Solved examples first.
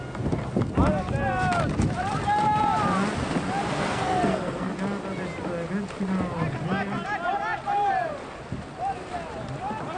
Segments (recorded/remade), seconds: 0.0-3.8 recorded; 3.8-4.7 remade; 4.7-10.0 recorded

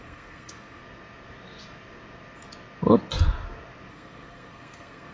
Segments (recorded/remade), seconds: 0.0-0.8 remade; 0.8-3.9 recorded; 3.9-5.1 remade

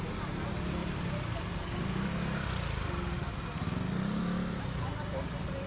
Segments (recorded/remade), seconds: 0.0-5.7 recorded

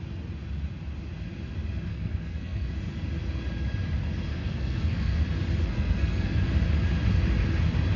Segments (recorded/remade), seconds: 0.0-1.9 recorded; 1.9-2.7 remade; 2.7-4.3 recorded; 4.3-5.2 remade; 5.2-5.7 recorded; 5.7-6.4 remade; 6.4-8.0 recorded

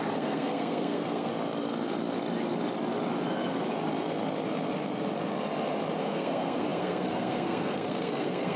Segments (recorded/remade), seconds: 0.0-1.3 remade; 1.3-6.0 recorded; 6.0-8.6 remade